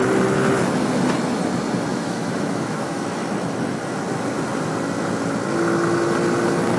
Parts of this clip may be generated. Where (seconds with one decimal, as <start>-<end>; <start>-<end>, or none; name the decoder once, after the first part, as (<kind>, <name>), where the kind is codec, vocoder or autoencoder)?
1.9-3.0 (autoencoder, DAC-VAE)